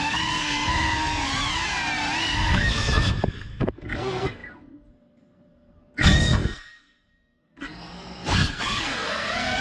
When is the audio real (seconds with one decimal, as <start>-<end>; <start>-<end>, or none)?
1.3-2.2

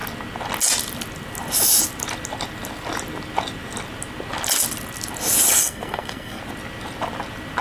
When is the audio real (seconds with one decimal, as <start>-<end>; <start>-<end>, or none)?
0.0-5.6; 6.4-7.6